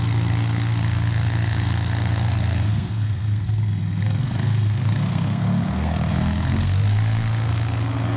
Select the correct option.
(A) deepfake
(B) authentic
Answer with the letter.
A